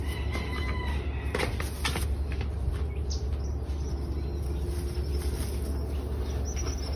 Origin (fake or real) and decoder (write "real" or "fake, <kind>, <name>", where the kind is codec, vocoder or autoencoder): real